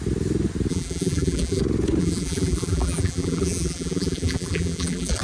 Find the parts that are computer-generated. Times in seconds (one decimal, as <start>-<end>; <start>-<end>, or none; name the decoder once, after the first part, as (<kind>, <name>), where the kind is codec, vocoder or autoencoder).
0.7-1.6 (vocoder, BigVGAN v2); 2.0-5.2